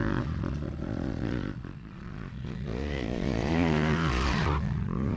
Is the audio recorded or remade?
remade